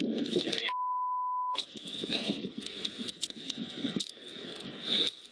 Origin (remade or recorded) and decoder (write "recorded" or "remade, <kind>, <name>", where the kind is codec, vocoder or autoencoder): remade, codec, SNAC